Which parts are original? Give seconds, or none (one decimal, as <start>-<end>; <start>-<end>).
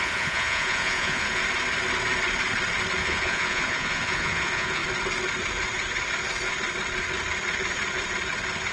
1.4-3.0; 4.8-8.7